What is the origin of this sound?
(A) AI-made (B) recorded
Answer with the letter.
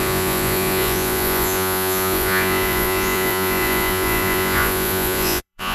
A